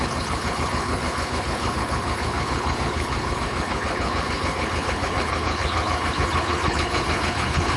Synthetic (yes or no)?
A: yes